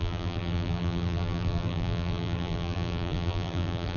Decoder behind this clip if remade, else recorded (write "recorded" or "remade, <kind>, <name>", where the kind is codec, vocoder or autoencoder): remade, vocoder, BigVGAN v2